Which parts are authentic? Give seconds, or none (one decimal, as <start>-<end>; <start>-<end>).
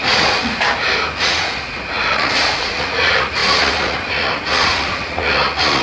0.5-1.2